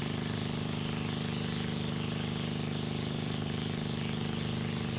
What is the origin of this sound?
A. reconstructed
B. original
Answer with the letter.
B